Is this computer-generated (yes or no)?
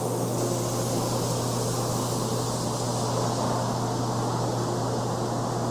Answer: no